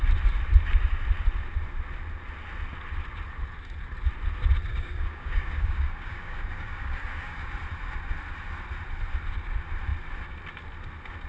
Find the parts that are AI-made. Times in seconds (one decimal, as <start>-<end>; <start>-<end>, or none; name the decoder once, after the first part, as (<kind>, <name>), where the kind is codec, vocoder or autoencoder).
4.7-7.4 (codec, DAC)